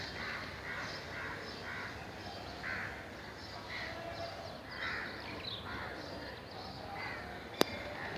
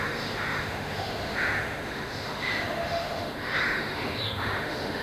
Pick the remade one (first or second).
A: second